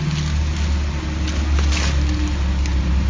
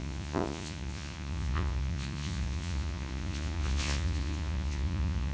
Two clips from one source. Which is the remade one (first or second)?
second